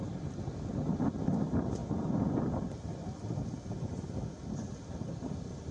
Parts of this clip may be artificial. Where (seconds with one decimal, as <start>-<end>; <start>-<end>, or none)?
none